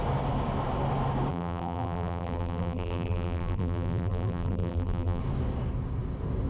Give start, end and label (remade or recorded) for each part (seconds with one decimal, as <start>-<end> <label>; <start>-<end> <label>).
0.0-1.3 recorded; 1.3-5.2 remade; 5.2-6.5 recorded